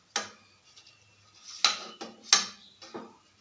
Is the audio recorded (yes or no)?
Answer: yes